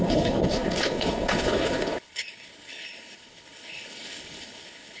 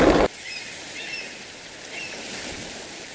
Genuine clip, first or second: second